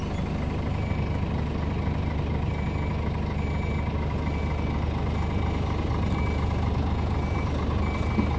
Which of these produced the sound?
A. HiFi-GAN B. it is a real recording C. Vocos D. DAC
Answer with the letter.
B